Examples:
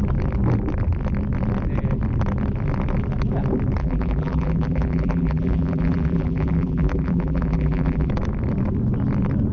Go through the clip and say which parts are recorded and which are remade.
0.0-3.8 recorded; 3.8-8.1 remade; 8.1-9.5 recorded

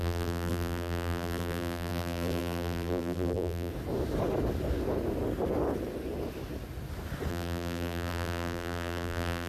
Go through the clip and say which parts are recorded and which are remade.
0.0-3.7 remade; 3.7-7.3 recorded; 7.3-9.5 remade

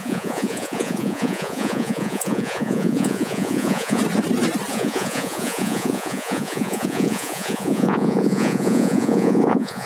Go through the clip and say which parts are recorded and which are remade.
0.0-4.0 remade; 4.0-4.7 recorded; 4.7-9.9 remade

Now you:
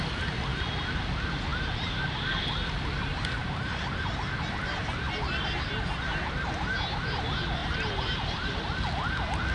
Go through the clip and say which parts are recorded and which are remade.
0.0-3.4 recorded; 3.4-4.1 remade; 4.1-7.6 recorded; 7.6-8.6 remade; 8.6-9.5 recorded

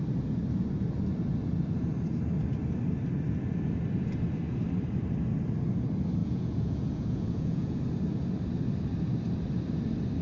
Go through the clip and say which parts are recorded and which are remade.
0.0-6.2 recorded; 6.2-7.8 remade; 7.8-10.2 recorded